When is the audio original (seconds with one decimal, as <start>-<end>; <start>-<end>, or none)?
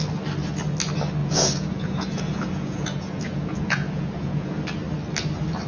0.0-1.2; 4.6-5.7